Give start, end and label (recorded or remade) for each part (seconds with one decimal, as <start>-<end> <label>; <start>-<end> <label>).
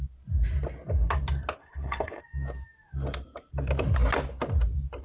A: 0.0-1.6 recorded; 1.6-2.2 remade; 2.2-5.0 recorded